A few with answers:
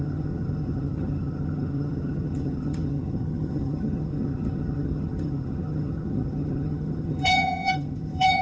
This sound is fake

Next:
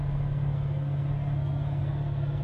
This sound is fake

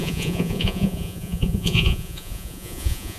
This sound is fake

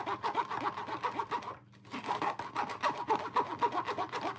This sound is real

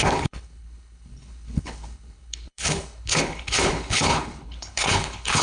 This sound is fake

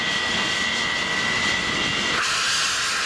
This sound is real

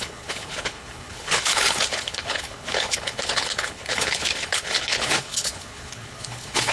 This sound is fake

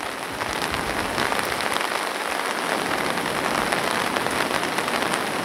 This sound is real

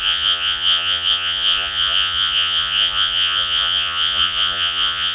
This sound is fake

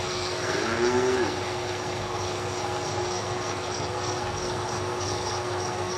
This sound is fake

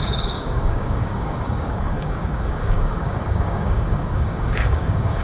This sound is fake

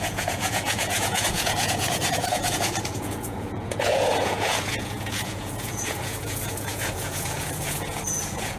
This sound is fake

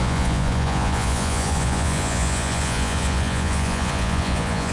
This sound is fake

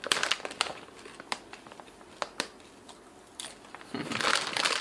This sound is real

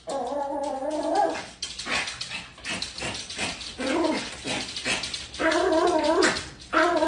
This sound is real